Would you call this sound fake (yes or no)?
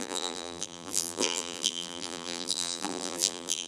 yes